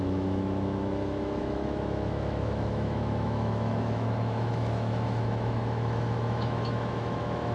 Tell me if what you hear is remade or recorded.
remade